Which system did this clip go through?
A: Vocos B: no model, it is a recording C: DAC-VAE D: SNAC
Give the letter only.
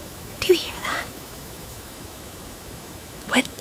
C